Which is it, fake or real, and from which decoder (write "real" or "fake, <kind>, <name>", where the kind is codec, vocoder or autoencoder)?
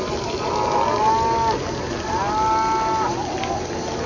real